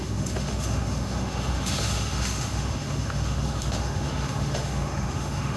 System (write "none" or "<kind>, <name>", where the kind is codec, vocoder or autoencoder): autoencoder, DAC-VAE